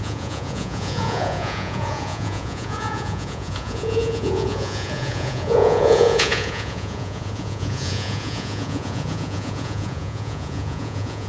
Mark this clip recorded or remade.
remade